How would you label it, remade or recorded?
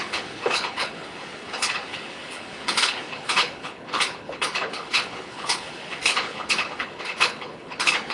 remade